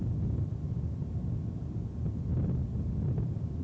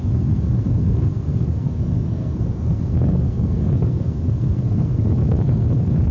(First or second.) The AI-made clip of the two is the second